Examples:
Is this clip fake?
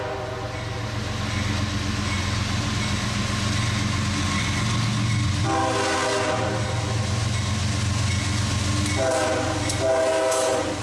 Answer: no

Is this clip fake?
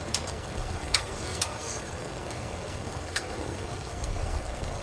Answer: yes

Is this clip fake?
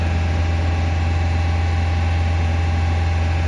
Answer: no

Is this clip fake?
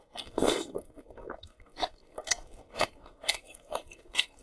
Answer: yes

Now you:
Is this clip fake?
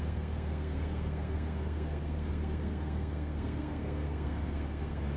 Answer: yes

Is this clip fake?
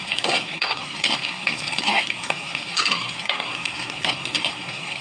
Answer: yes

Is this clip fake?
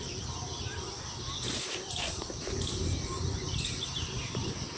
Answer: no